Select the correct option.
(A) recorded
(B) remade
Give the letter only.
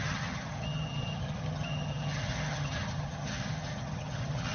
B